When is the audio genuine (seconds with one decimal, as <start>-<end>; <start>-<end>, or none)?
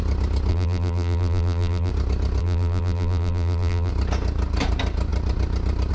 0.0-0.5; 1.9-2.4; 3.9-5.9